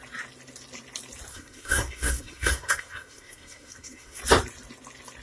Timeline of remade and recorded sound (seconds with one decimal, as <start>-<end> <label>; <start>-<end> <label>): 0.0-1.3 recorded; 1.3-4.2 remade; 4.2-5.2 recorded